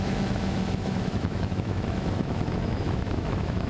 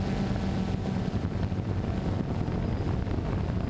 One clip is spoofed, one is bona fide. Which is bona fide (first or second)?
second